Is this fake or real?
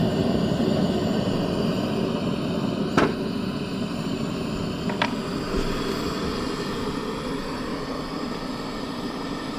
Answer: real